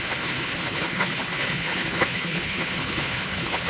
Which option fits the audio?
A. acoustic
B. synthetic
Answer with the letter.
B